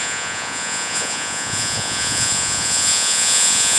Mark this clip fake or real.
fake